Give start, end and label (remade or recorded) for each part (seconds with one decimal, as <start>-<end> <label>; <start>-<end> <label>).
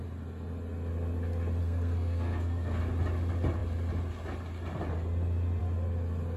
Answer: 0.0-1.6 recorded; 1.6-2.8 remade; 2.8-6.4 recorded